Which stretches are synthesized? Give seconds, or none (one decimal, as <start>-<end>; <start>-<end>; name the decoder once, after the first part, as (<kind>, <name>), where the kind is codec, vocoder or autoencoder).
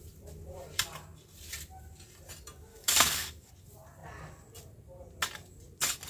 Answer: 2.7-3.5 (codec, DAC)